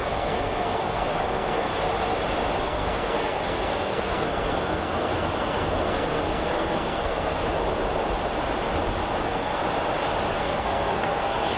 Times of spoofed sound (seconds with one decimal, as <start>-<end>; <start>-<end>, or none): 0.0-1.7; 2.6-7.4; 9.2-9.6; 10.3-11.6